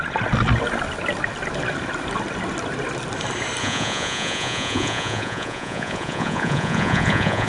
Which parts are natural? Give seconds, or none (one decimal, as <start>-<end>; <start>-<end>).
0.0-3.6